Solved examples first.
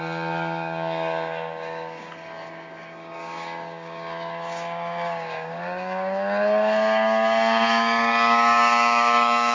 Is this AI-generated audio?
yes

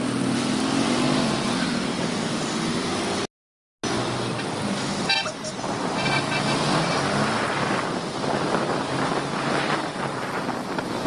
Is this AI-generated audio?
no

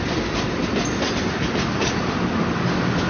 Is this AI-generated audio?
no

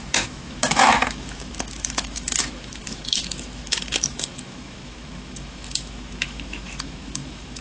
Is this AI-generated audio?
yes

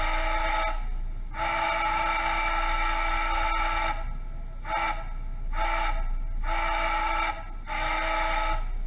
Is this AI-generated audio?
no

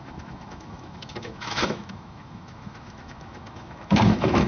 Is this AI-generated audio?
yes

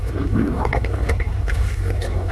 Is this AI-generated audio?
yes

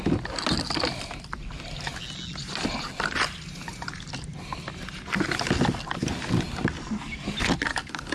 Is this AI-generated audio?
no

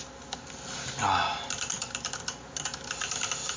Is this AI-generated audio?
no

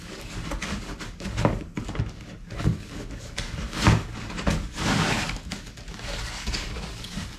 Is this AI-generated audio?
yes